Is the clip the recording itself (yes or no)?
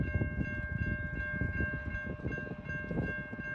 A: yes